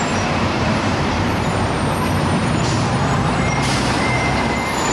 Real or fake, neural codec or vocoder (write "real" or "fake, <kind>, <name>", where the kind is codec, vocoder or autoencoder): fake, vocoder, BigVGAN v2